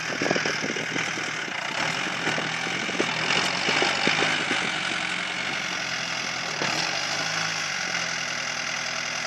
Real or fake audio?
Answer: real